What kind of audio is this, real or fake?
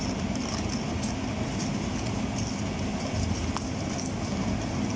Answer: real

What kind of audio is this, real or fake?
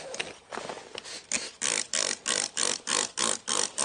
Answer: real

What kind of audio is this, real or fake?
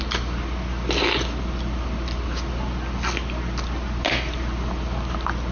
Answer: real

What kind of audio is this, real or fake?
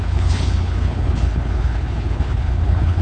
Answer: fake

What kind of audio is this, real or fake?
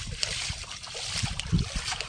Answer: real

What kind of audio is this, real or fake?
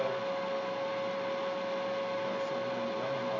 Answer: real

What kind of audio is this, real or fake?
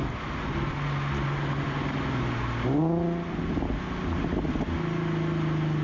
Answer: real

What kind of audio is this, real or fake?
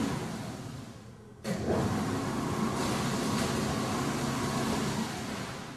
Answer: real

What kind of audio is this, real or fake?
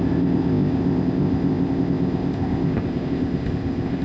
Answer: fake